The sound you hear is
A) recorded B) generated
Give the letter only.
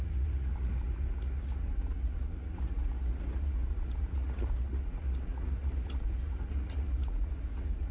B